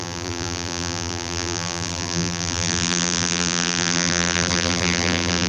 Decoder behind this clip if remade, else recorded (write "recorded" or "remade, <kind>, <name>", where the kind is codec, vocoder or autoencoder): remade, vocoder, BigVGAN v2